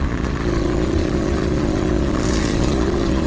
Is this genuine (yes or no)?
no